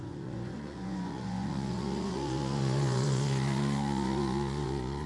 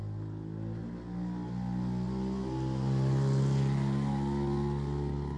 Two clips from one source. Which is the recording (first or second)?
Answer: second